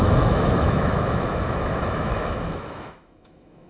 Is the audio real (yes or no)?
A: no